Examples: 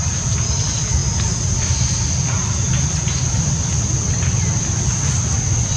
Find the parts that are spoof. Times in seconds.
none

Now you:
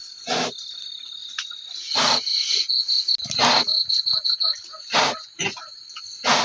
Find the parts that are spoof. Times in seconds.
1.2-1.8 (vocoder, BigVGAN v2)

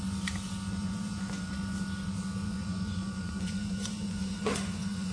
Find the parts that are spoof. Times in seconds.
0.8-1.5 (vocoder, Vocos); 2.4-5.1

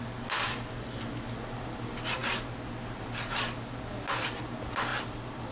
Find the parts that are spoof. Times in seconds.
none

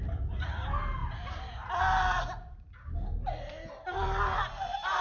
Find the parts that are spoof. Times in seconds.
none

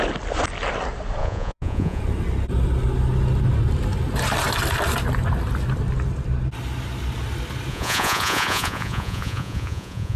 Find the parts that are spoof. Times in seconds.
1.2-2.0 (vocoder, Vocos); 7.7-10.2

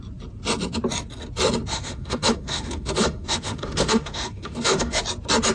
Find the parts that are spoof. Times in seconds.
1.7-5.0 (autoencoder, DAC-VAE)

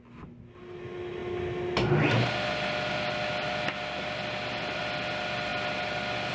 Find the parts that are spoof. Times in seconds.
none